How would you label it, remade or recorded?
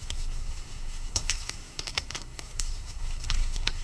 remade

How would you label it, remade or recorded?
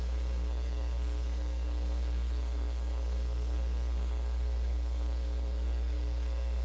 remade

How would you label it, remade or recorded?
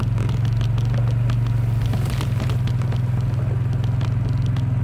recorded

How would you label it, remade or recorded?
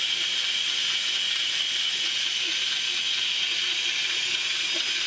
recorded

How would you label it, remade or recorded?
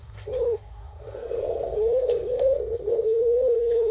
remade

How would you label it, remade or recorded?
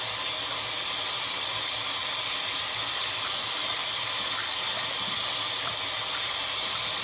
recorded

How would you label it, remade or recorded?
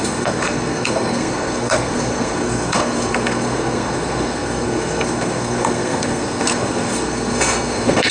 remade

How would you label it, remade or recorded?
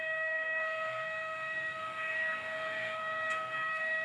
remade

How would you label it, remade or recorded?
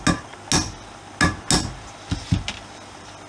recorded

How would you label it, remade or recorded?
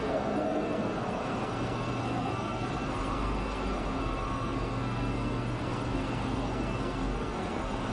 remade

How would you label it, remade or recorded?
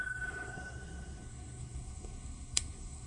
remade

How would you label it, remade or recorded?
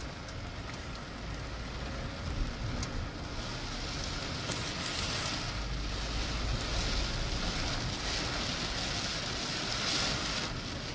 recorded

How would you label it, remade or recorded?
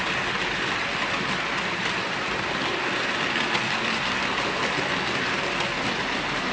recorded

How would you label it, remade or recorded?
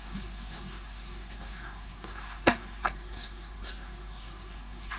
remade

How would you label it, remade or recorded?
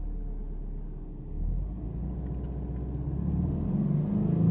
recorded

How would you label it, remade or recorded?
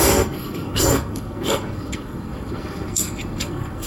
remade